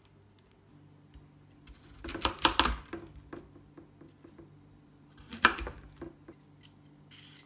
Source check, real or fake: real